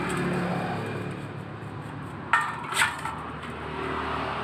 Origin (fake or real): real